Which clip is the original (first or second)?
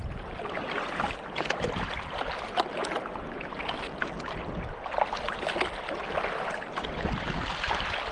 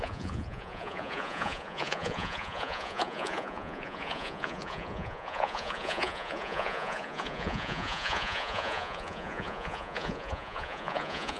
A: first